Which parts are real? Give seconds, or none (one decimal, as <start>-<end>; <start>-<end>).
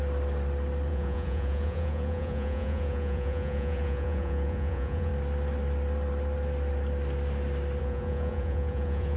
0.0-0.9; 5.1-7.8